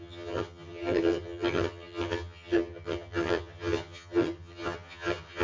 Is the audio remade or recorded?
remade